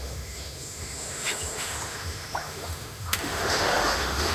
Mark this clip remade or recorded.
remade